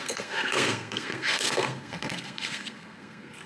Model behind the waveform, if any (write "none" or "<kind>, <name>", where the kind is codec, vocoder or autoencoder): codec, SNAC